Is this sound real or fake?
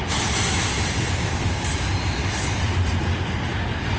real